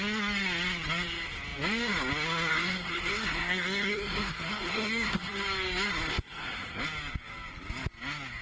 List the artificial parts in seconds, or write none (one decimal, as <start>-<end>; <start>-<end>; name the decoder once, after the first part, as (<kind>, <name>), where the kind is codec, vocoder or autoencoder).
2.5-5.3 (codec, SNAC); 6.1-6.8